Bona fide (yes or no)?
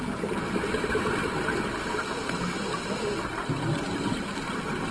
yes